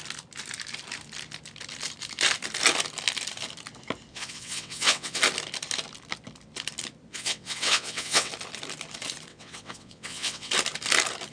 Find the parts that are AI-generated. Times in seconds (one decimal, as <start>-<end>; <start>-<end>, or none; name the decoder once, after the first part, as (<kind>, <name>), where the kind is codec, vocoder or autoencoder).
4.1-5.2 (vocoder, WaveNeXt); 7.1-8.3; 9.3-10.5